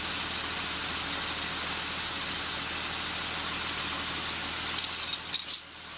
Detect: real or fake real